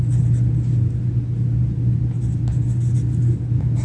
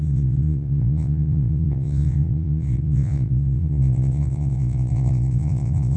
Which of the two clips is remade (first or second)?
second